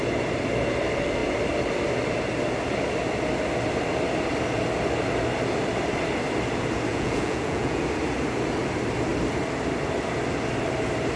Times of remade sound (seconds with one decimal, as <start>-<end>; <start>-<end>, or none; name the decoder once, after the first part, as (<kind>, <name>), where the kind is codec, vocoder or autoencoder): 6.9-7.8 (vocoder, Vocos)